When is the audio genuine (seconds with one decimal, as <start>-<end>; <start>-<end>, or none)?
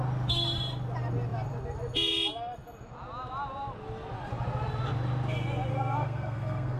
0.0-5.7